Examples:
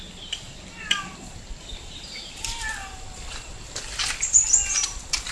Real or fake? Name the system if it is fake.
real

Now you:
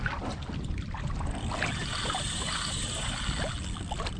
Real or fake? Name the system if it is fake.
real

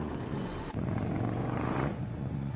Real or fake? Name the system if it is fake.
fake, vocoder, Vocos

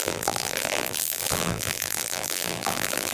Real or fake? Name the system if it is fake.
fake, vocoder, BigVGAN v2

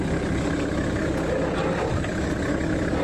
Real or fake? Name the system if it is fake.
real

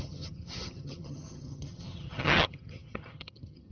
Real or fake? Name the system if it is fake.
fake, vocoder, HiFi-GAN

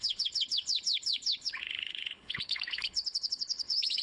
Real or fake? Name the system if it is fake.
fake, codec, HILCodec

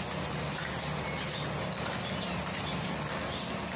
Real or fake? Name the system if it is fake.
real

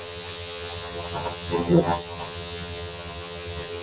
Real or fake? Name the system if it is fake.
fake, vocoder, HiFi-GAN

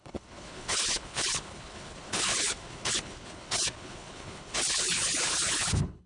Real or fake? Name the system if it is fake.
fake, codec, HILCodec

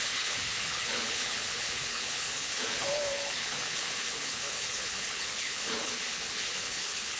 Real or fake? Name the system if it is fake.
fake, codec, HILCodec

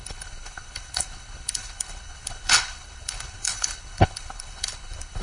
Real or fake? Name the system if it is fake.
fake, codec, HILCodec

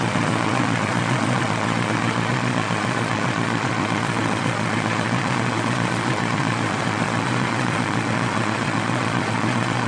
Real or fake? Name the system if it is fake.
fake, vocoder, Vocos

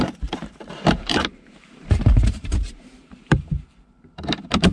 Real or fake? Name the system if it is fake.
fake, vocoder, BigVGAN v2